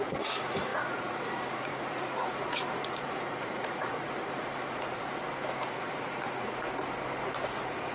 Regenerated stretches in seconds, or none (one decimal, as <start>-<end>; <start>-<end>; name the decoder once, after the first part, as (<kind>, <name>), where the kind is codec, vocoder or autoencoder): 0.0-5.2 (vocoder, Vocos); 5.7-6.7; 7.5-7.9